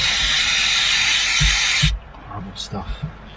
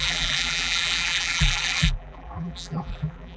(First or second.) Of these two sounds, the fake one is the second